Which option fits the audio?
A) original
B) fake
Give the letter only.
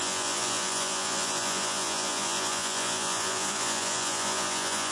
B